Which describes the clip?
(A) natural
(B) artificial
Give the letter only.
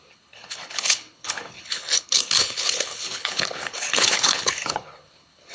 B